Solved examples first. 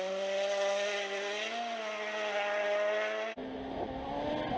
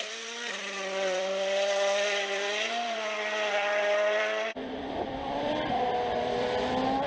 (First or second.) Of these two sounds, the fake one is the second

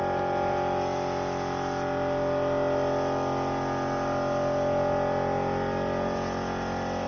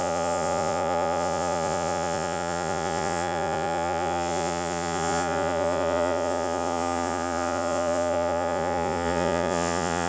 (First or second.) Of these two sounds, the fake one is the second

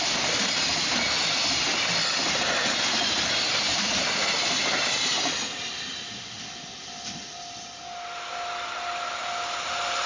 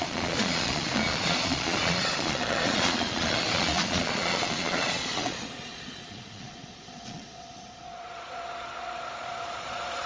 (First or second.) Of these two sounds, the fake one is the second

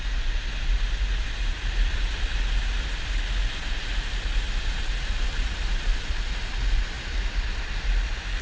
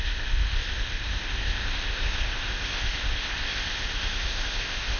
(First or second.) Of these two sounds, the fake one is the second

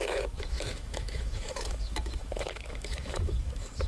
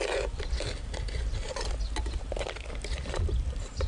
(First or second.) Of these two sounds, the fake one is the first